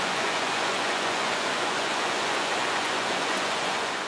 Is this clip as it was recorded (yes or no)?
no